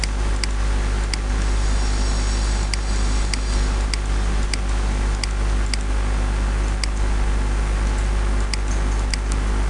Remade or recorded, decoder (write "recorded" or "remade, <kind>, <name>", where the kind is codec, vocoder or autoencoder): recorded